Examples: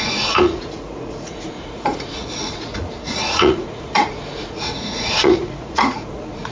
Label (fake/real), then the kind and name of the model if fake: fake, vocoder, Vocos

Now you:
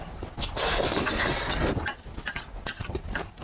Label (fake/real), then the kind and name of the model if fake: real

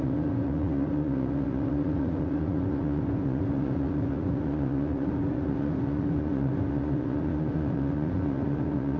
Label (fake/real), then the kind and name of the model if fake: fake, vocoder, Vocos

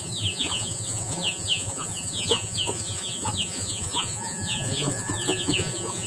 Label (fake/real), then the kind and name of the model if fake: fake, vocoder, Vocos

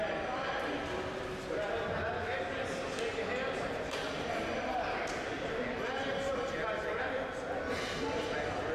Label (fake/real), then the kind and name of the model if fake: real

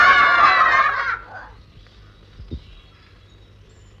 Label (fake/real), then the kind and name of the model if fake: real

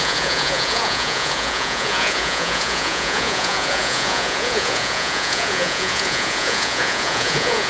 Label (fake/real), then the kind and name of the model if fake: fake, vocoder, Vocos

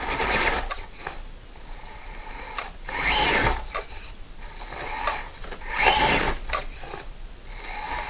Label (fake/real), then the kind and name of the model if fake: real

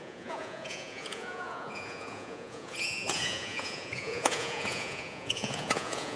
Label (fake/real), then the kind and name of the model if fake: fake, vocoder, Vocos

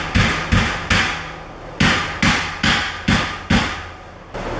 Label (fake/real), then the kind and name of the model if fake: real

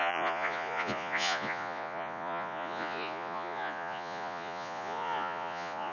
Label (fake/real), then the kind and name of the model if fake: fake, vocoder, Vocos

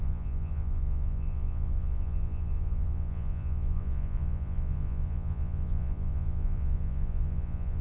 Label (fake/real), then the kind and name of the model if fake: fake, vocoder, Vocos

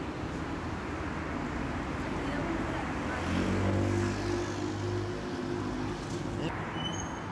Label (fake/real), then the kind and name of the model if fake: real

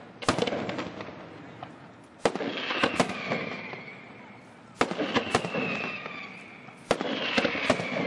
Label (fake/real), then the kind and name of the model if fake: real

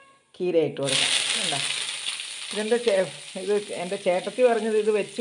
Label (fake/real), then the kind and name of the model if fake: real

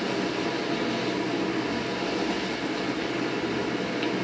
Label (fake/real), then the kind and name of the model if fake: real